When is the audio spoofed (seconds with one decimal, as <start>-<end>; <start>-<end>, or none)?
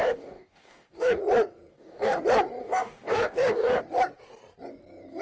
0.0-1.2; 1.7-2.2; 2.6-3.8